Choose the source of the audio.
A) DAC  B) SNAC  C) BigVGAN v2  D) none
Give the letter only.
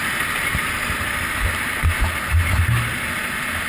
D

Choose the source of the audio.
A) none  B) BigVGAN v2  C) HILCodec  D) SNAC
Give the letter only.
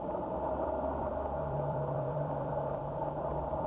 B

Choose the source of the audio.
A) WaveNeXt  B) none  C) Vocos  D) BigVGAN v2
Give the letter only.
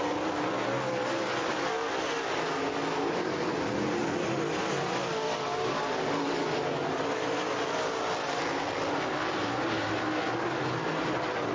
B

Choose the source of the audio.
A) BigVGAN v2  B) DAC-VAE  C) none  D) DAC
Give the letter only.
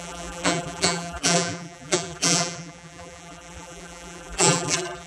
A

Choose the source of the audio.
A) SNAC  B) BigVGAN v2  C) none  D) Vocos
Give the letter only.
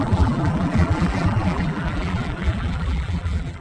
B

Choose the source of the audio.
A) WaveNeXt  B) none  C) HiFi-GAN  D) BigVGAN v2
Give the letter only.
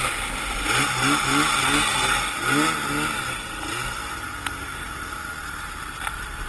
B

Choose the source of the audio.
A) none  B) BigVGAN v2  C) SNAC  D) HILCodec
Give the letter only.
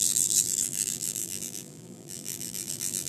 B